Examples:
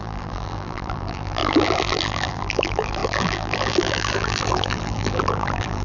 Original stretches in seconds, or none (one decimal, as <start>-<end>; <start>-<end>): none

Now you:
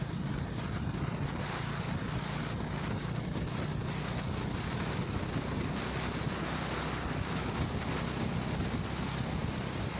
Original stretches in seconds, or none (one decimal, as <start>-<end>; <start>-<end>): 0.0-9.4

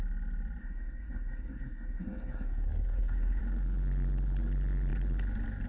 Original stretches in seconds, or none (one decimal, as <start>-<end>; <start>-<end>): 0.0-0.6; 3.4-5.7